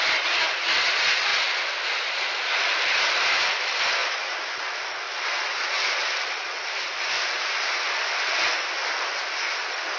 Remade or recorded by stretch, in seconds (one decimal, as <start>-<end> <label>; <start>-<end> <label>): 0.0-10.0 recorded